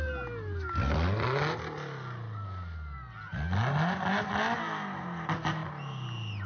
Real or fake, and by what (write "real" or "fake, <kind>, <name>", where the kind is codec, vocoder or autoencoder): real